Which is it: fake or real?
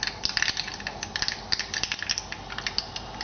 real